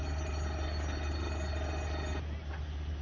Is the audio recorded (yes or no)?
yes